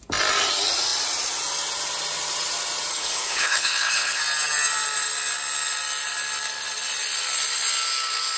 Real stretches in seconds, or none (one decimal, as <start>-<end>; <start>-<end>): 0.0-2.9; 4.2-8.4